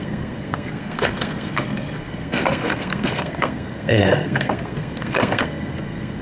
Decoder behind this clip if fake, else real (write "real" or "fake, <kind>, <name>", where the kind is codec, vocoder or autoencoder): fake, codec, SNAC